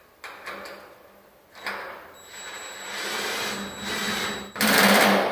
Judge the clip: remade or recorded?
recorded